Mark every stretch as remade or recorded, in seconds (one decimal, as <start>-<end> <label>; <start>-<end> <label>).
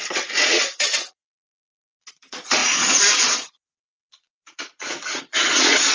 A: 0.0-5.9 remade